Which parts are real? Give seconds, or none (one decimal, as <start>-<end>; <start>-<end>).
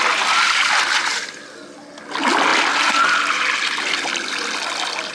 0.0-5.1